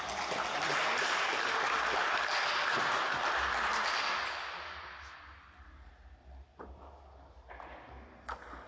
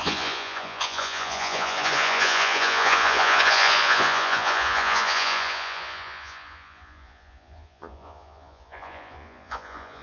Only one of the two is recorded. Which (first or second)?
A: first